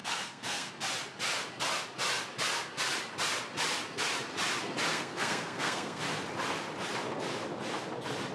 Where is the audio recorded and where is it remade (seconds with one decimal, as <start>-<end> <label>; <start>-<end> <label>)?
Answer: 0.0-0.7 remade; 0.7-4.9 recorded; 4.9-6.0 remade; 6.0-8.3 recorded